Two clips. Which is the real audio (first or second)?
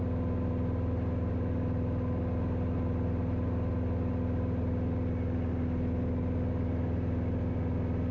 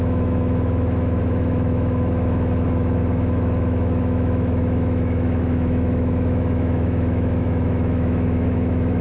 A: first